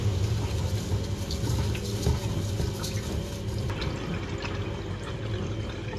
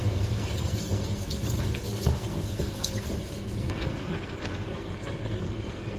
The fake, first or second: second